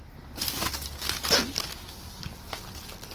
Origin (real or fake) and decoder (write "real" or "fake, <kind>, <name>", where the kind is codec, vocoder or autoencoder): real